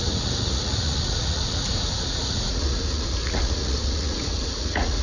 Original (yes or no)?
no